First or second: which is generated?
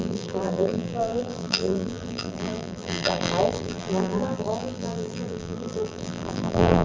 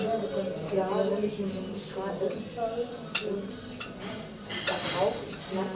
first